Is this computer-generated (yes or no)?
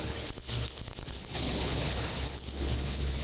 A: yes